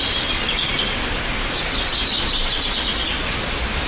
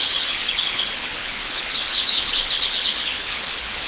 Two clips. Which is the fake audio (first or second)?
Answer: second